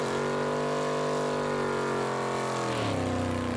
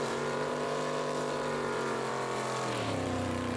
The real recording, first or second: first